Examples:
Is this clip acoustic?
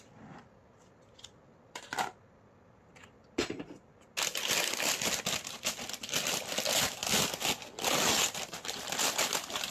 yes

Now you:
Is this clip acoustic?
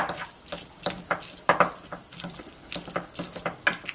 yes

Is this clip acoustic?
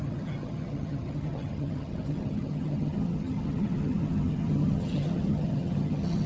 no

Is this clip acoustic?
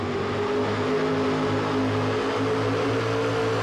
yes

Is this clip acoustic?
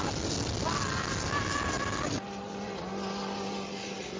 yes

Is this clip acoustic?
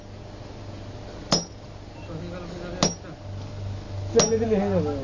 yes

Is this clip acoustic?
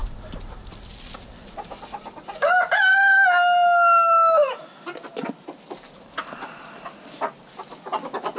yes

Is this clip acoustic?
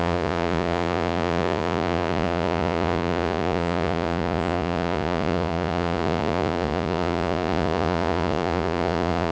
no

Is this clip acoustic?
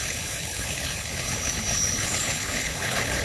no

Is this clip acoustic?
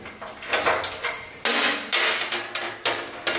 yes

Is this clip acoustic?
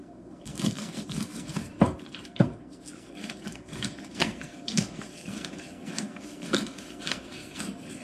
no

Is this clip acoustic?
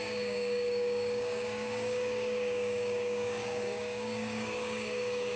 no